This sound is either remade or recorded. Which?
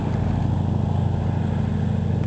recorded